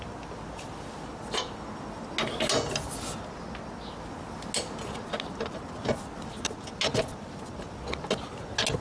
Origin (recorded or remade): recorded